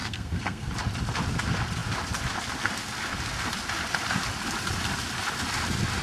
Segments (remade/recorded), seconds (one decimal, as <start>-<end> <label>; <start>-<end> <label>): 0.0-0.7 remade; 0.7-6.0 recorded